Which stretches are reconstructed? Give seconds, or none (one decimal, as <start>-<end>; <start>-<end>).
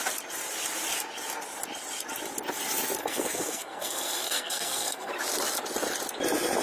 3.0-5.1